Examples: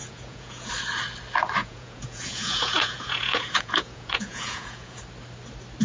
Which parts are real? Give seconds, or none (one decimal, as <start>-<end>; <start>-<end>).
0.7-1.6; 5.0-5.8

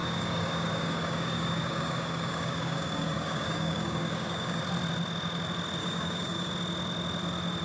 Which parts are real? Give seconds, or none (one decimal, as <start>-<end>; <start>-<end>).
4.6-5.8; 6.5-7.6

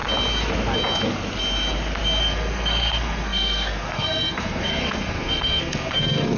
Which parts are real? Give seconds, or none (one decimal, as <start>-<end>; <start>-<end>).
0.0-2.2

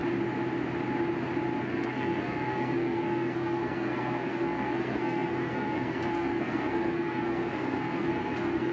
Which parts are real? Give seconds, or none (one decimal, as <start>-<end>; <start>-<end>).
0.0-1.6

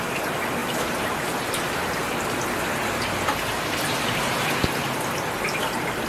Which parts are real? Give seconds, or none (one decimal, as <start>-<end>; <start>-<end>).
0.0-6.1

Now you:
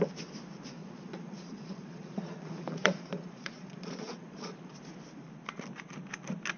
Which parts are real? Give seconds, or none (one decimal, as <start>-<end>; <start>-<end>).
0.0-0.8; 4.8-6.6

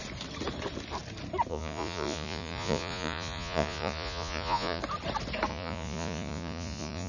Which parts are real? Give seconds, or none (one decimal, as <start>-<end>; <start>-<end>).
0.0-1.5; 4.8-5.5

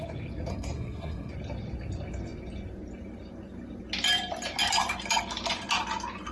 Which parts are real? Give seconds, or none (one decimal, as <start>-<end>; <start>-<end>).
0.0-0.5; 1.3-6.3